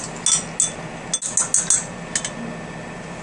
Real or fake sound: real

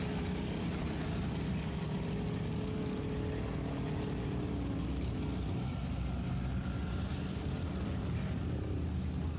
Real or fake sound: real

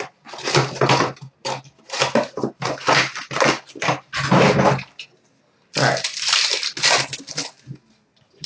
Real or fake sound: real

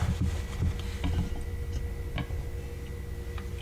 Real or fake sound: real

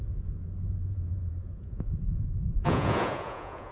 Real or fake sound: fake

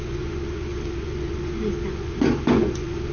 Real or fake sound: fake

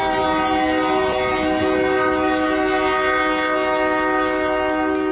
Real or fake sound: real